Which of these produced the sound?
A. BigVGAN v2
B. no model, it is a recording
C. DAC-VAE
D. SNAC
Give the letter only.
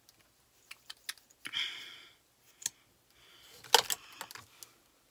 B